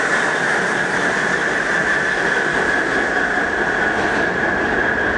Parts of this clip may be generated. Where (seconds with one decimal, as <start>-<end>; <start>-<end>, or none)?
none

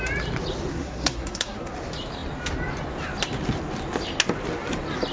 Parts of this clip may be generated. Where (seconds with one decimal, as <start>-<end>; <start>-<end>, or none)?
0.7-1.7

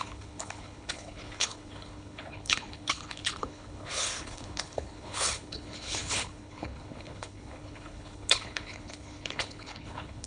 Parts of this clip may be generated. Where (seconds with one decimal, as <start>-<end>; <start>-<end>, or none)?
0.0-10.3